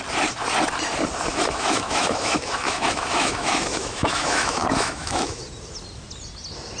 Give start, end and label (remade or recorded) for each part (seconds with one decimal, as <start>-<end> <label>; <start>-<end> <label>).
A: 0.0-1.3 recorded; 1.3-5.4 remade; 5.4-6.8 recorded